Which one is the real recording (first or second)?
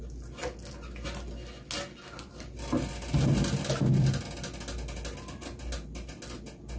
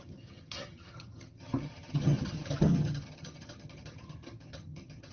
first